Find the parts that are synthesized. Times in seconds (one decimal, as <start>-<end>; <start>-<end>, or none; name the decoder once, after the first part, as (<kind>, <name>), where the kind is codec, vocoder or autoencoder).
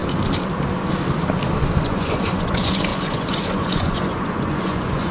1.8-5.1 (vocoder, Vocos)